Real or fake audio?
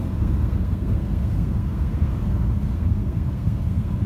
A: fake